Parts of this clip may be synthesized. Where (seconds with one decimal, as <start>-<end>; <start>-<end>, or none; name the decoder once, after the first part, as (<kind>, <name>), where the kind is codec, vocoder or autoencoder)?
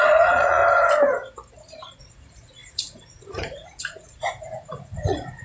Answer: 0.0-0.6 (vocoder, Vocos); 2.0-5.4